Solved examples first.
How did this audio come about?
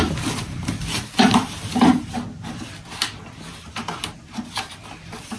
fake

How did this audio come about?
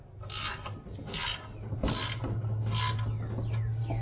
real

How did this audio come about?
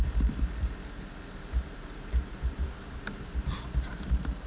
fake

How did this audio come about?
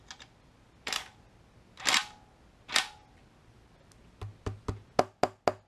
real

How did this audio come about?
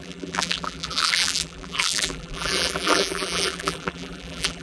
fake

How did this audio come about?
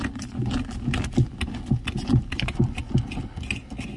real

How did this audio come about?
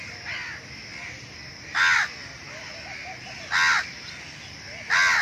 real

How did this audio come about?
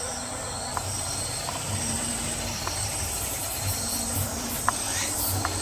fake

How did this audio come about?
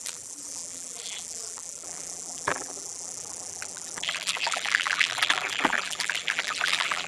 fake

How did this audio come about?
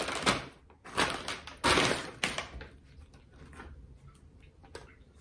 real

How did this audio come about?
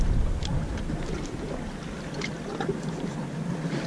real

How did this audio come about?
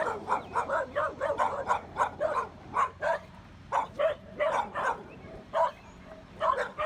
fake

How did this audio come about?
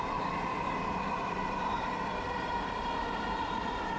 fake